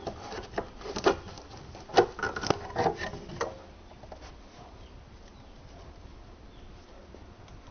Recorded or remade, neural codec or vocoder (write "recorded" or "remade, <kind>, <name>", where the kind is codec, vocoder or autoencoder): recorded